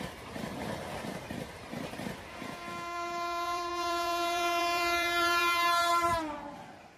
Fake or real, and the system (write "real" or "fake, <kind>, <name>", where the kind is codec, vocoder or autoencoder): fake, vocoder, BigVGAN v2